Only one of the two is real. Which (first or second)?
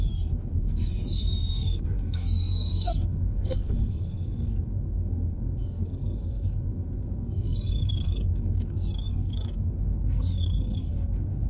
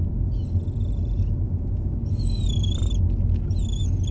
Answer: second